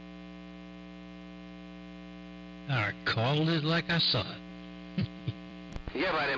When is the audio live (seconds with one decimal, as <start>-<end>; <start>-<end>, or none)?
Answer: 0.0-4.5